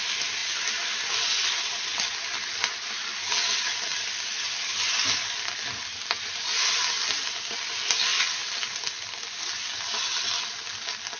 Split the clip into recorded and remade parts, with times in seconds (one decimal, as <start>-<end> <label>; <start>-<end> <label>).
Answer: 0.0-11.2 recorded

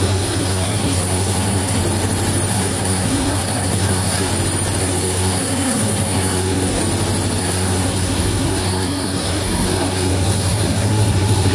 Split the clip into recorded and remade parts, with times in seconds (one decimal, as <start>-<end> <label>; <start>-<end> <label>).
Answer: 0.0-1.8 remade; 1.8-2.5 recorded; 2.5-4.3 remade; 4.3-4.8 recorded; 4.8-6.8 remade; 6.8-7.4 recorded; 7.4-11.5 remade

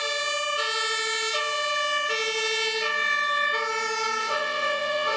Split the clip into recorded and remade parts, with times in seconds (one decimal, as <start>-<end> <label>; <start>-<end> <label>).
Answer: 0.0-4.2 recorded; 4.2-5.2 remade